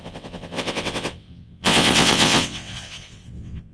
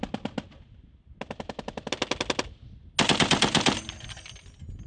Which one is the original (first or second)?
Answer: second